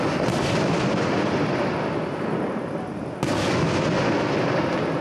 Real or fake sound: real